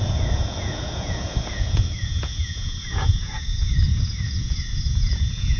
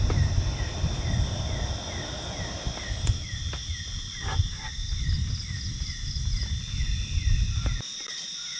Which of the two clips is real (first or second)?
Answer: second